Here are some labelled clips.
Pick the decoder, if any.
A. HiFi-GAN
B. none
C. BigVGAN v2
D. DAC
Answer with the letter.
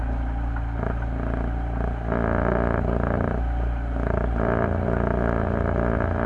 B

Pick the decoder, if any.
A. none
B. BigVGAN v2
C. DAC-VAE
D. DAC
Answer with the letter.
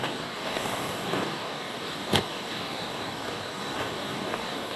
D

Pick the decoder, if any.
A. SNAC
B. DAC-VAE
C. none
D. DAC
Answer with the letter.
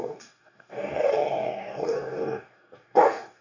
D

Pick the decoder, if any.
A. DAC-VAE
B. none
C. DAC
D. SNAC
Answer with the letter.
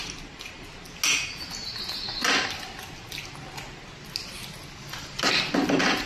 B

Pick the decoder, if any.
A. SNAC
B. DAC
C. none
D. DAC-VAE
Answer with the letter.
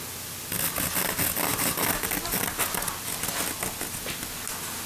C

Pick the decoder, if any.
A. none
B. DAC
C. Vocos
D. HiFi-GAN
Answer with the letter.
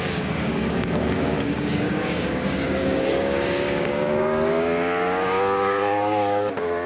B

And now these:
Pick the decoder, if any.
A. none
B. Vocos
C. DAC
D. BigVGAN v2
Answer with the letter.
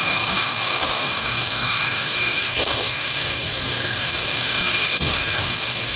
C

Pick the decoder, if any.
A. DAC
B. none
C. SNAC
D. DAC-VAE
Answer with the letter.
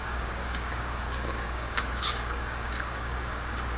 A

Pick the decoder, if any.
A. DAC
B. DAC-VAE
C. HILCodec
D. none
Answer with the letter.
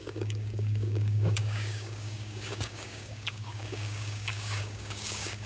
A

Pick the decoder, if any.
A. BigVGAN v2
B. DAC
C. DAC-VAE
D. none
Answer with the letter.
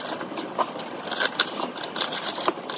D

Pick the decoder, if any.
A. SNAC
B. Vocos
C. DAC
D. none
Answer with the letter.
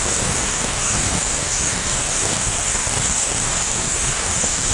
C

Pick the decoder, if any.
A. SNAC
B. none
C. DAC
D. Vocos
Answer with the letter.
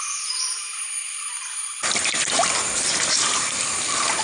B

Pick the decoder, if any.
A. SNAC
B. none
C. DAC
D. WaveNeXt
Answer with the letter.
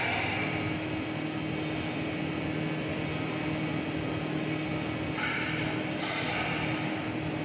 B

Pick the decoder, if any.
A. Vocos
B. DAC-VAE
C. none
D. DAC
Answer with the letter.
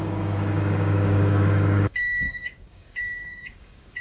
D